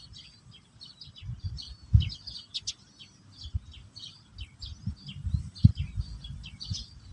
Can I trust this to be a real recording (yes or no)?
yes